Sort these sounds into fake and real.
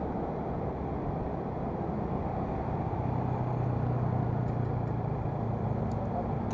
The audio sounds real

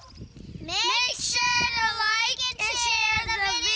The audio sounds real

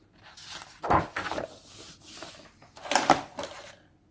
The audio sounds real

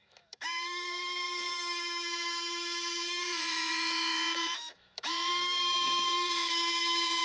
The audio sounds fake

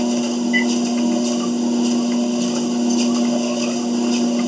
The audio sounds real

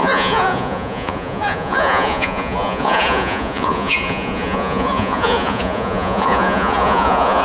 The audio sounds fake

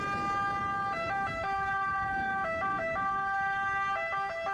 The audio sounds real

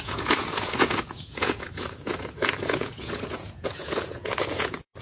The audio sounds fake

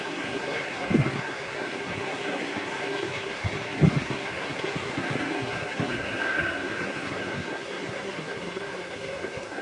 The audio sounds fake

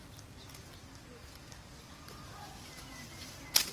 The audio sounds real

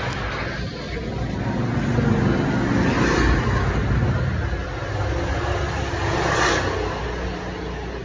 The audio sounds real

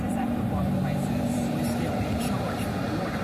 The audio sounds fake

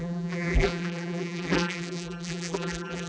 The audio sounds fake